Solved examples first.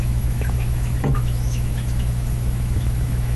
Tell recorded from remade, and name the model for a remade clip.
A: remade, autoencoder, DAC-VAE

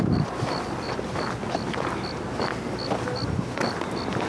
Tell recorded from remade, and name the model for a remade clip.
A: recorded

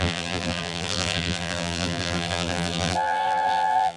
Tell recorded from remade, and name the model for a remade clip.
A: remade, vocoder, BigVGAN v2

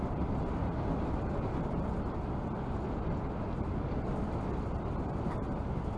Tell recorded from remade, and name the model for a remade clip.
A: recorded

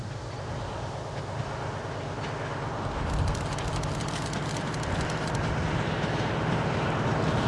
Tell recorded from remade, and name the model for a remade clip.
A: recorded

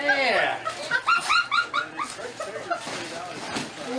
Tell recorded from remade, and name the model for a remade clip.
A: recorded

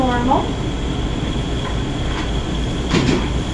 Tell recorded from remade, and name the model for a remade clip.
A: recorded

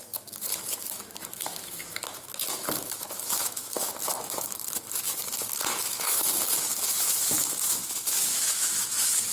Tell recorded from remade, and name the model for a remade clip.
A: remade, autoencoder, DAC-VAE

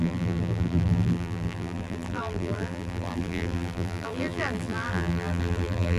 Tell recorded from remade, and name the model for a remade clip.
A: remade, vocoder, BigVGAN v2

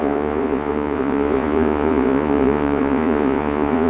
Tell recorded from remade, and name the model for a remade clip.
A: remade, vocoder, Vocos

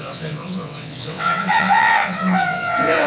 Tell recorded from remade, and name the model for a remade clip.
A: remade, vocoder, WaveNeXt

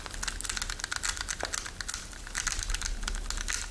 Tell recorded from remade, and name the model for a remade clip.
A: recorded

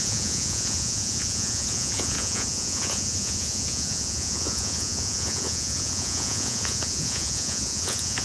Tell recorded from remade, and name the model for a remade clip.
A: remade, vocoder, Vocos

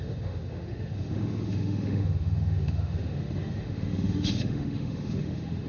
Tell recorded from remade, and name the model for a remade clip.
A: remade, autoencoder, DAC-VAE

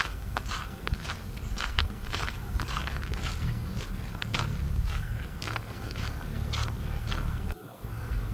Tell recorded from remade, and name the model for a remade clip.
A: remade, codec, SNAC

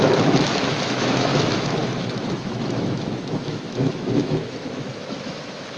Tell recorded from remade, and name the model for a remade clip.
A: remade, autoencoder, DAC-VAE